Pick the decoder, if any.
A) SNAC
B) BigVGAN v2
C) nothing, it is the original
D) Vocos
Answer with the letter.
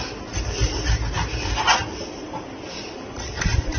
B